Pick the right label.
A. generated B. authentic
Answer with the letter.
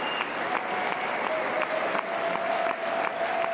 B